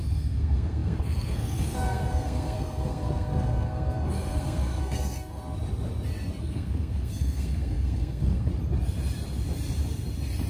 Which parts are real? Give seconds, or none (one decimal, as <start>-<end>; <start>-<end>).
5.4-6.4; 8.5-10.5